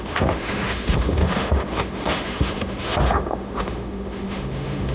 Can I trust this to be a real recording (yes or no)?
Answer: no